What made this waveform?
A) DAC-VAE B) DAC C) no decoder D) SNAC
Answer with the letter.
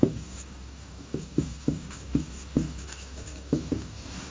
B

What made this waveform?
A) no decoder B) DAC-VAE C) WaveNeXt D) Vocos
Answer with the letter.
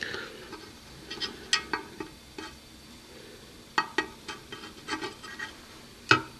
A